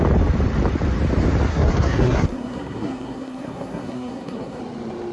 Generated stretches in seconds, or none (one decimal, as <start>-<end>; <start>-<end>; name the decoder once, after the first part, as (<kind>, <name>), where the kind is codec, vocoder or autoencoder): 1.5-4.6 (codec, SNAC)